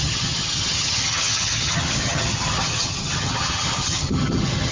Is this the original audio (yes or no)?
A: no